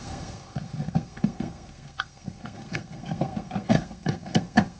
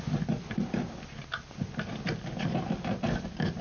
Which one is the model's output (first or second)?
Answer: first